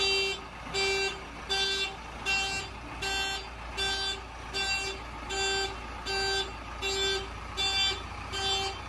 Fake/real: real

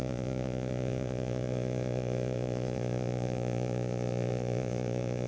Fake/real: fake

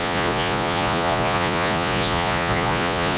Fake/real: fake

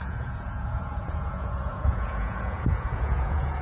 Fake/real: fake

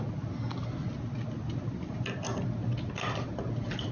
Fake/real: real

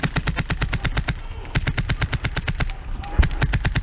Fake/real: real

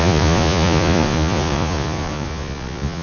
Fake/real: fake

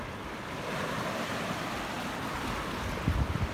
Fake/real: real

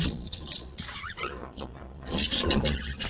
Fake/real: fake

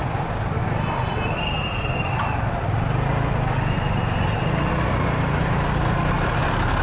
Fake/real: real